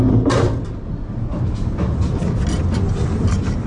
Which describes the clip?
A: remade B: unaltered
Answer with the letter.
B